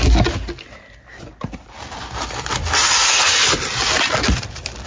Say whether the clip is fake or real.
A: real